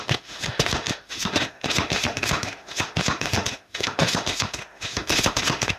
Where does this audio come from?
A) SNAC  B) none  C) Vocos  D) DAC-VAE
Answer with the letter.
D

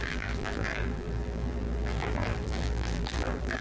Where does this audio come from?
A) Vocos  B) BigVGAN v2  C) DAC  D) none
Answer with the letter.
B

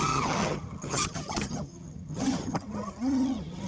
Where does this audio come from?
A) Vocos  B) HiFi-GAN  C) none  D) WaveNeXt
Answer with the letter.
B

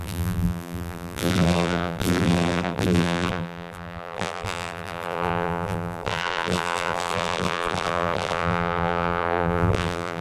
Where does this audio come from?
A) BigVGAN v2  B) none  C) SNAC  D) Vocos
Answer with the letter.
A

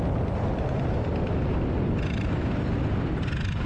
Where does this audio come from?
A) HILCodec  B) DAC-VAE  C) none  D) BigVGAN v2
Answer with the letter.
C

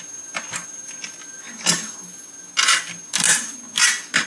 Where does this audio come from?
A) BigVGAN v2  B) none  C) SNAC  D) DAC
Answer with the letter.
B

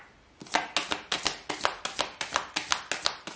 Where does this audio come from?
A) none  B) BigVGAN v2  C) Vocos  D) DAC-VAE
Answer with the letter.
A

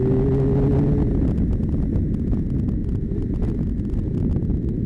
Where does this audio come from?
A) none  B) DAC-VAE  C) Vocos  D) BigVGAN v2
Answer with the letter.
A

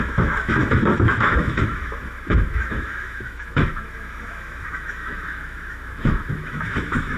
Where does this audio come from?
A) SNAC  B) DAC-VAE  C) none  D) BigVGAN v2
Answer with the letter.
B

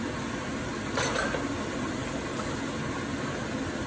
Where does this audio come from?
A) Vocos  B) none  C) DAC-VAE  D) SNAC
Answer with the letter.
B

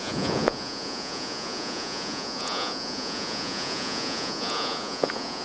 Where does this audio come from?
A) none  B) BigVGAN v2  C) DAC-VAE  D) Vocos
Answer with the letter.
D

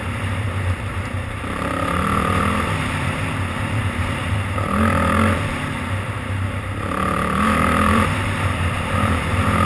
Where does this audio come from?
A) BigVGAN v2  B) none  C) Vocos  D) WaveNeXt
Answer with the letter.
A